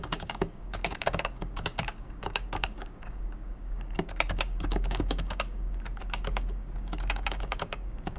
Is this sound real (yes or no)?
no